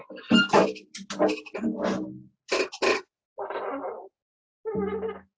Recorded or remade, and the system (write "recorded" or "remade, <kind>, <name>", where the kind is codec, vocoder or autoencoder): recorded